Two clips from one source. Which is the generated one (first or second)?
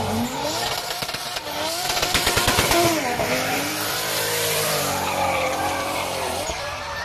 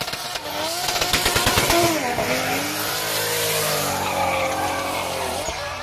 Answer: first